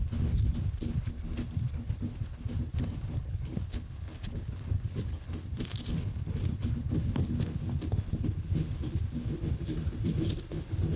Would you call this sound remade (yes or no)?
yes